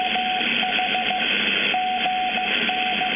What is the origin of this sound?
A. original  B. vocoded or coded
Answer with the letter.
A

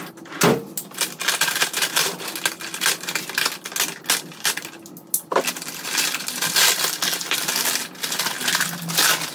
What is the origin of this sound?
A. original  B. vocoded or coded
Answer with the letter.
A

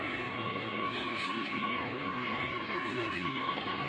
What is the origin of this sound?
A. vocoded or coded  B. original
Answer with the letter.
A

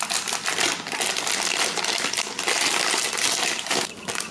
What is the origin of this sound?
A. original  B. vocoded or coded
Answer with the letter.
A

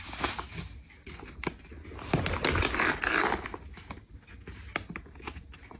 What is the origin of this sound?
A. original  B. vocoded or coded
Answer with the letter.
A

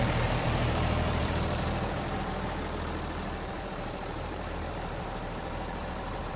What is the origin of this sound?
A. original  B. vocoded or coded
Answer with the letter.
B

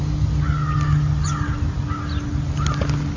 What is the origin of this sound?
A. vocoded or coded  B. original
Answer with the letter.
B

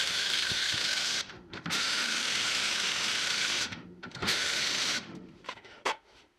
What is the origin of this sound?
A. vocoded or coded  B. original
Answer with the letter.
A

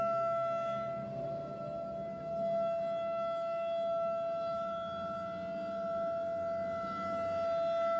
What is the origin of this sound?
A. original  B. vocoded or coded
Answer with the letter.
A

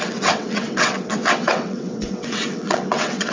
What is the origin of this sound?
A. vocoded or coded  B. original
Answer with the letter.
A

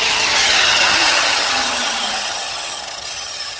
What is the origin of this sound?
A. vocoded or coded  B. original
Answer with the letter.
A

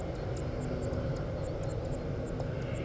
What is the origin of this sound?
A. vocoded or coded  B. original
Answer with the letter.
B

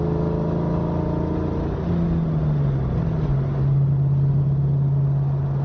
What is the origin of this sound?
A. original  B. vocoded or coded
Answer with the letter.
A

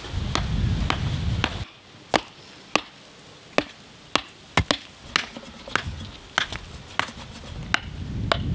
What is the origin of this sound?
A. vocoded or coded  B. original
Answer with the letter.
B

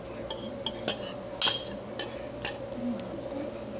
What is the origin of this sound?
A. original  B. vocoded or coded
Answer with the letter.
A